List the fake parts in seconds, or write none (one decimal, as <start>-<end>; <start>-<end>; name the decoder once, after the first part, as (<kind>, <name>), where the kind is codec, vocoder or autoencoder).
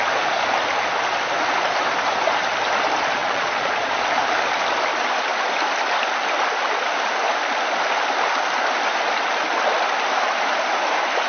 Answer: 3.2-4.0 (vocoder, Vocos)